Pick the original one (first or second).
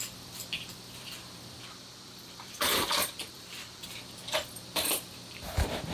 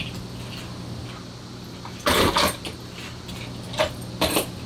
second